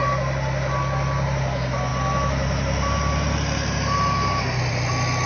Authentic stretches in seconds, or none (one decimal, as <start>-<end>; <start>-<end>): 0.0-5.3